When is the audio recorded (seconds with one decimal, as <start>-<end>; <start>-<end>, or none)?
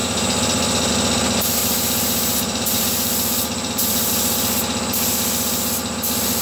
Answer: 0.9-1.6; 4.1-6.4